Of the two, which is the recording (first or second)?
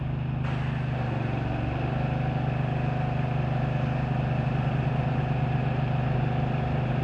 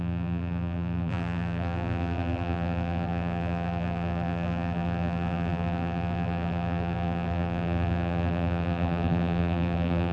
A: first